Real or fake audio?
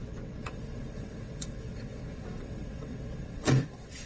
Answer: fake